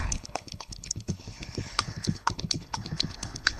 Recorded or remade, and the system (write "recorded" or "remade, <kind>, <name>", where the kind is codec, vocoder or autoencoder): remade, codec, HILCodec